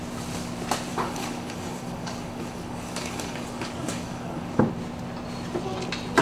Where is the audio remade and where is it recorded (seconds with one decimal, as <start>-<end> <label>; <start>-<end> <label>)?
0.0-0.9 recorded; 0.9-4.6 remade; 4.6-6.2 recorded